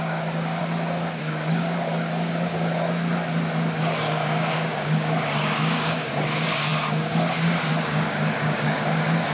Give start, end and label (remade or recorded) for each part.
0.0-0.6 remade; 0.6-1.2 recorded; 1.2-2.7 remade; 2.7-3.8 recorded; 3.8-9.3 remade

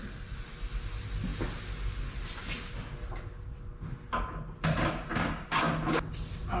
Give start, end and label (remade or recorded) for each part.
0.0-5.1 recorded; 5.1-5.7 remade; 5.7-6.6 recorded